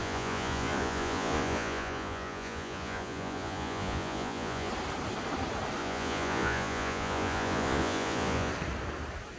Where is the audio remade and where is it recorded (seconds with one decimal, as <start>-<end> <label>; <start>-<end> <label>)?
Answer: 0.0-4.7 remade; 4.7-5.8 recorded; 5.8-8.5 remade; 8.5-9.4 recorded